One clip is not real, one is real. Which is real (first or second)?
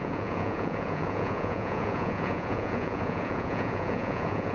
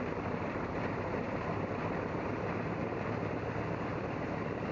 second